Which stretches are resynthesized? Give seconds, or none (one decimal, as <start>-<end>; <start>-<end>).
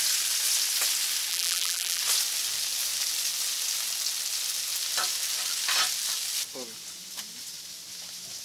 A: 1.3-2.0